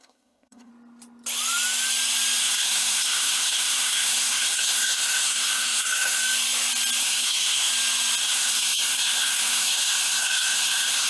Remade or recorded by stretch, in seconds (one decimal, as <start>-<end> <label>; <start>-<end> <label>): 0.0-0.7 remade; 0.7-2.4 recorded; 2.4-6.2 remade; 6.2-7.0 recorded; 7.0-7.7 remade; 7.7-8.2 recorded; 8.2-11.1 remade